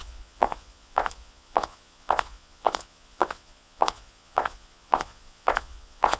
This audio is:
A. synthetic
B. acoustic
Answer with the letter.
A